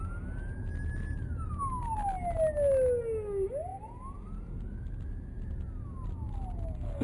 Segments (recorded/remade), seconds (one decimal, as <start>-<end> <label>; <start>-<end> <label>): 0.0-7.0 recorded